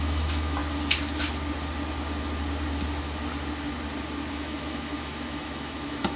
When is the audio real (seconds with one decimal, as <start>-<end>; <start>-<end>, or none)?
0.6-4.3